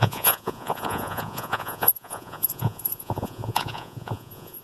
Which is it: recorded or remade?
remade